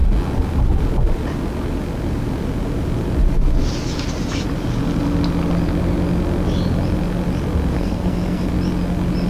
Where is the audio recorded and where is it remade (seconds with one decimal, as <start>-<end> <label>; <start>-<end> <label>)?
0.0-7.7 recorded; 7.7-8.5 remade; 8.5-9.3 recorded